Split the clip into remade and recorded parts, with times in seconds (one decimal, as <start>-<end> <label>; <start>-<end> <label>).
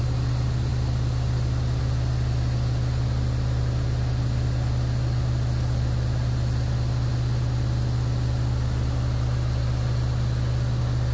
0.0-11.1 recorded